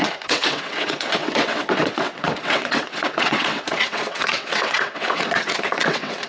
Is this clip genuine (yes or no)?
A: no